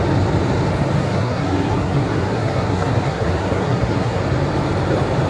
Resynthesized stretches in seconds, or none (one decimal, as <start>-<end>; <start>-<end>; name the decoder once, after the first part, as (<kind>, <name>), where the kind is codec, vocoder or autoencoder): 1.0-4.2 (codec, SNAC)